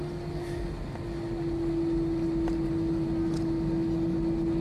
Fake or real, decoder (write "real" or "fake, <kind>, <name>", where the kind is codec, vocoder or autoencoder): real